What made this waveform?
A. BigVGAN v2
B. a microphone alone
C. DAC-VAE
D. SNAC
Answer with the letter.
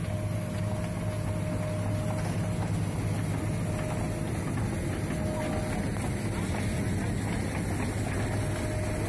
B